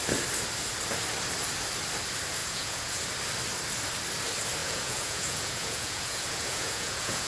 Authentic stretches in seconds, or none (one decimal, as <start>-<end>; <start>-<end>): 0.0-2.4; 3.0-4.6